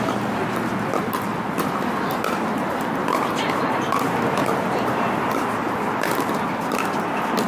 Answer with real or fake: real